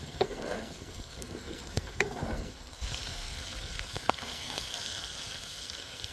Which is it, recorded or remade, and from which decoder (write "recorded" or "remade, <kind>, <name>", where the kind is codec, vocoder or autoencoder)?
remade, codec, SNAC